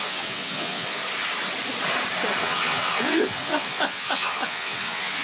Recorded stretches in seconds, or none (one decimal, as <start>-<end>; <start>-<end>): 1.0-2.4